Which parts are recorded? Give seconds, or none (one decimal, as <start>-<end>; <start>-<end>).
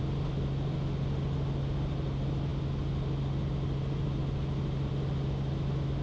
0.0-6.0